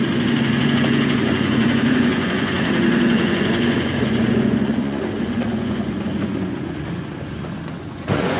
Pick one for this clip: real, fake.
fake